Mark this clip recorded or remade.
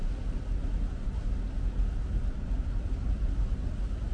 recorded